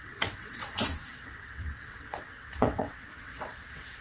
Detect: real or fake fake